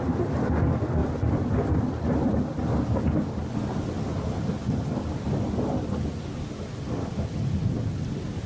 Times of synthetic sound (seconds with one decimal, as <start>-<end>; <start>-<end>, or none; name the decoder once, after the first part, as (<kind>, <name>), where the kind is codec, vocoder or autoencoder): none